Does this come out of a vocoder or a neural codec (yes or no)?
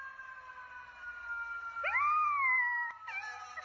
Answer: no